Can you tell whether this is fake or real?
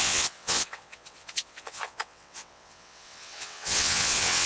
fake